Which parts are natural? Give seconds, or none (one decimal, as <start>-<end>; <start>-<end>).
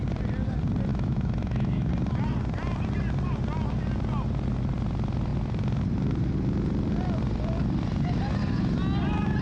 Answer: 0.0-0.9; 1.9-9.4